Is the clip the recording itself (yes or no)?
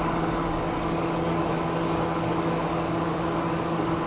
no